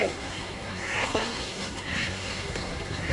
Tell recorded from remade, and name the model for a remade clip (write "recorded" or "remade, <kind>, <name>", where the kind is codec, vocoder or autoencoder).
remade, codec, SNAC